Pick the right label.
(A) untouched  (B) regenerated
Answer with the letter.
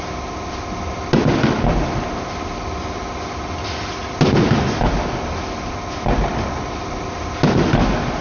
A